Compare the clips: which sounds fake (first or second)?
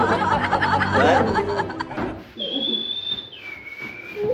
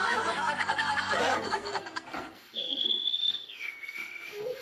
second